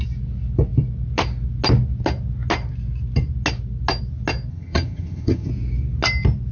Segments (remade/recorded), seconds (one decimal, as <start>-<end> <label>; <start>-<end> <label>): 0.0-4.5 recorded; 4.5-5.5 remade; 5.5-6.5 recorded